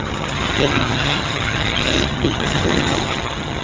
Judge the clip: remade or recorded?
remade